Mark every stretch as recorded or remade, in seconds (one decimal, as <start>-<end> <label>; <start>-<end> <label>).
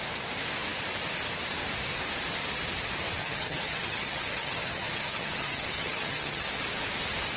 0.0-3.2 recorded; 3.2-6.5 remade; 6.5-7.4 recorded